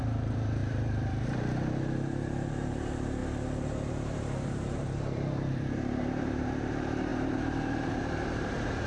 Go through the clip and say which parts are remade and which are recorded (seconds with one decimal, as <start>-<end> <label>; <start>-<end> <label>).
0.0-3.2 remade; 3.2-3.9 recorded; 3.9-8.9 remade